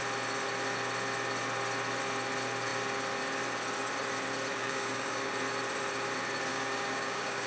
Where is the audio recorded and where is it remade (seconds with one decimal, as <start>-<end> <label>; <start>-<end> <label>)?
0.0-4.5 recorded; 4.5-5.3 remade; 5.3-6.5 recorded; 6.5-7.5 remade